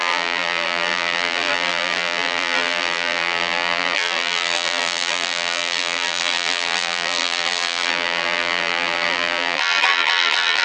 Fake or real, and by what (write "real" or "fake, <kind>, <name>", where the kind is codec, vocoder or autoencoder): fake, vocoder, BigVGAN v2